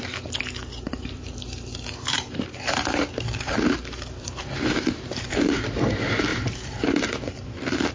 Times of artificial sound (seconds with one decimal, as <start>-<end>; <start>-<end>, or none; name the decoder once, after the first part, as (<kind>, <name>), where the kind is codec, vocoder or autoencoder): 0.9-5.6 (vocoder, BigVGAN v2); 6.3-7.9